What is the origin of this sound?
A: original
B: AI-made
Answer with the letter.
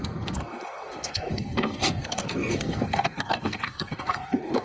B